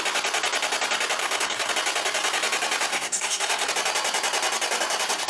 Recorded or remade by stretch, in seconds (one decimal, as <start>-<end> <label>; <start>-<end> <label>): 0.0-1.2 recorded; 1.2-1.7 remade; 1.7-2.9 recorded; 2.9-3.7 remade; 3.7-5.3 recorded